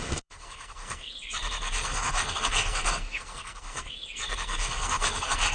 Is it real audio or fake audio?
fake